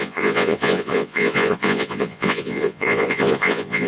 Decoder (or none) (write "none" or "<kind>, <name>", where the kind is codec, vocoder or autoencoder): vocoder, Vocos